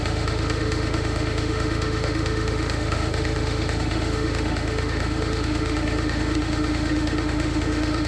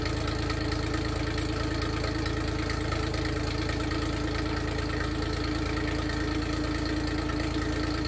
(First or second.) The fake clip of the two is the first